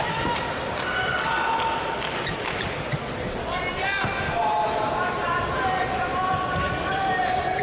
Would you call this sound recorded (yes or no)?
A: yes